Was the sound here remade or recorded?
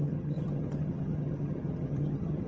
remade